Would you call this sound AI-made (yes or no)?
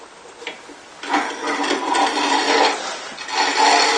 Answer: no